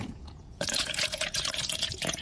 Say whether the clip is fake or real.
fake